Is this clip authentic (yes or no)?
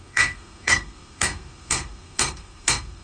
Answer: no